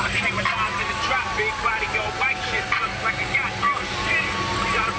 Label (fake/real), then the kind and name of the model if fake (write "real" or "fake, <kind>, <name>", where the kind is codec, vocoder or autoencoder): real